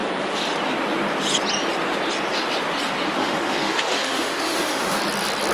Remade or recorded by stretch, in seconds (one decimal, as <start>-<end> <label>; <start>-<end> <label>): 0.0-3.2 recorded; 3.2-5.0 remade; 5.0-5.5 recorded